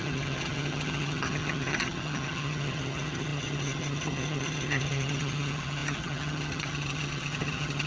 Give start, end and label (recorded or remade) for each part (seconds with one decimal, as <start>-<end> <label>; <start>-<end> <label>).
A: 0.0-7.9 remade